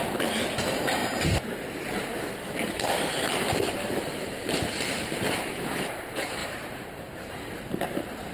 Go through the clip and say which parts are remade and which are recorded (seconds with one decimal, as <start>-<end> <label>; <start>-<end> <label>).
0.0-1.0 remade; 1.0-3.7 recorded; 3.7-8.3 remade